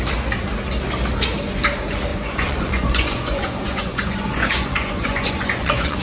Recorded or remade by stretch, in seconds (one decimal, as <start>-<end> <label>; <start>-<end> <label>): 0.0-2.1 recorded; 2.1-6.0 remade

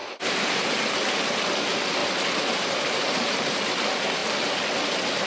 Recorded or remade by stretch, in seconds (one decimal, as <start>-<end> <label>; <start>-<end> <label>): 0.0-0.7 remade; 0.7-2.0 recorded; 2.0-3.7 remade; 3.7-5.3 recorded